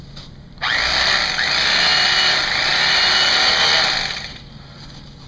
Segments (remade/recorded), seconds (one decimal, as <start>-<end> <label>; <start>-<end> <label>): 0.0-5.3 recorded